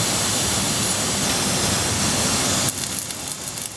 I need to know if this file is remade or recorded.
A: recorded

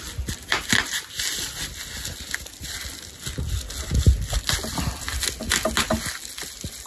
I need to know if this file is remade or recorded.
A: recorded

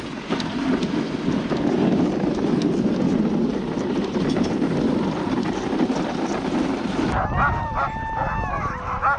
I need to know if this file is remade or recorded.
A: recorded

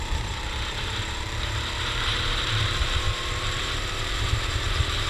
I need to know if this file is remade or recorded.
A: remade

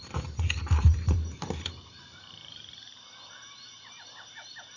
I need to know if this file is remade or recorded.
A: remade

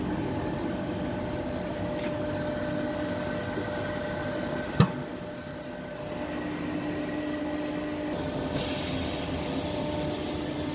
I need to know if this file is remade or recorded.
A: recorded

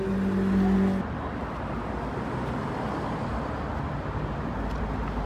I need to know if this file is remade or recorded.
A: recorded